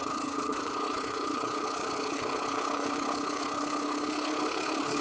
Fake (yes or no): yes